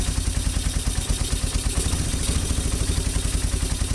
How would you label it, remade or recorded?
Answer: recorded